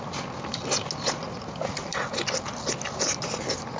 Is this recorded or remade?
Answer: recorded